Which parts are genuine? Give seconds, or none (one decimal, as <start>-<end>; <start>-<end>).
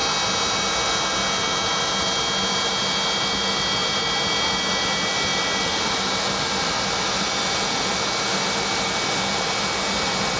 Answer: 0.0-10.4